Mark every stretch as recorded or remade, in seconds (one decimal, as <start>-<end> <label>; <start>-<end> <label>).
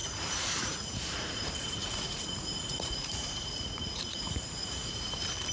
0.0-1.3 remade; 1.3-1.8 recorded; 1.8-5.1 remade; 5.1-5.5 recorded